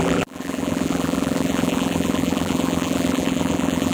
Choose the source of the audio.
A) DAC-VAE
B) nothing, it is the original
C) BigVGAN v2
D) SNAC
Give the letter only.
C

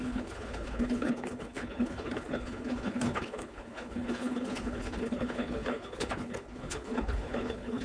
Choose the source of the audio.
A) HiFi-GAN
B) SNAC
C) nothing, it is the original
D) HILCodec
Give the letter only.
D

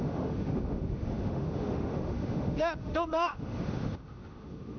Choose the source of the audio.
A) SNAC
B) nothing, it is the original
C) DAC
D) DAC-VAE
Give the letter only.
D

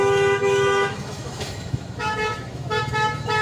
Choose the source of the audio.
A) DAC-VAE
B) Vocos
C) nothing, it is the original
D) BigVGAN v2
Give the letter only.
A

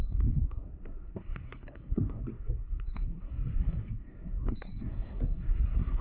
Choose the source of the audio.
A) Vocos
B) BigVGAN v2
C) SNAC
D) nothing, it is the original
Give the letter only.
C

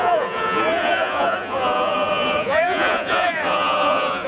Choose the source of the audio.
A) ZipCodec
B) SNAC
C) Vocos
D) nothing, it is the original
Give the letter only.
C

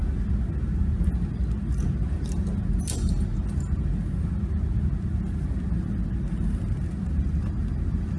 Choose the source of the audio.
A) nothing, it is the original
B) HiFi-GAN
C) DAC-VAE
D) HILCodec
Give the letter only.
A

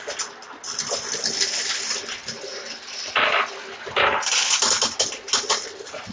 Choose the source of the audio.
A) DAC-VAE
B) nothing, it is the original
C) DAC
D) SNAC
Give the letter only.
B